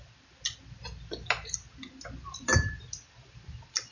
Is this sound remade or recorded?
recorded